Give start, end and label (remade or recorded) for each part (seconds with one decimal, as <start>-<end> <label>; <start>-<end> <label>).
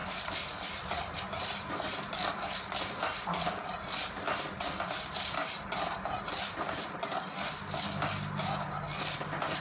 0.0-9.6 recorded